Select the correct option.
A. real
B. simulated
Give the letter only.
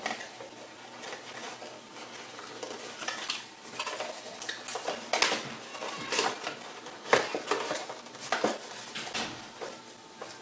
A